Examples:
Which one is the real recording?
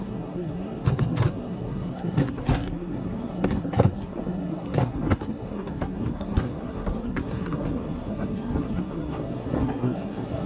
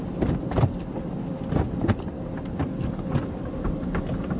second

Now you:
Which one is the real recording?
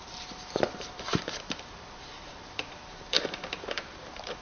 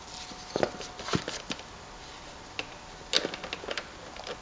second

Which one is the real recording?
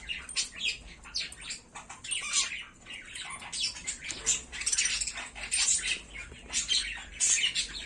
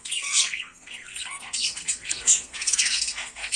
first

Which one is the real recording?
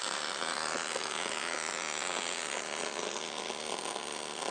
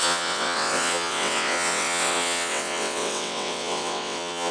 first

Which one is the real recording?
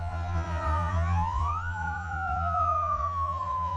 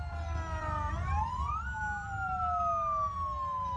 second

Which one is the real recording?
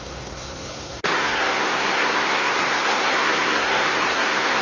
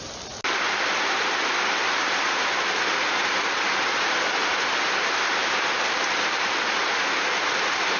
second